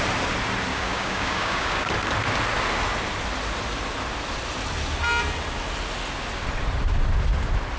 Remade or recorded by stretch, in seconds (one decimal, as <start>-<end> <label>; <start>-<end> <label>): 0.0-0.7 recorded; 0.7-1.9 remade; 1.9-7.8 recorded